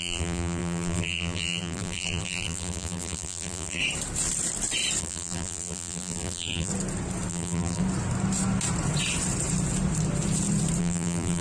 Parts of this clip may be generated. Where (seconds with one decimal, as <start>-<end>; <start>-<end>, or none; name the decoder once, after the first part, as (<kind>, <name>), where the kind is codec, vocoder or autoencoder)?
0.0-3.8 (vocoder, BigVGAN v2); 5.0-6.7; 7.3-7.8; 10.8-11.4